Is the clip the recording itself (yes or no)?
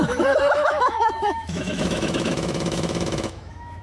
no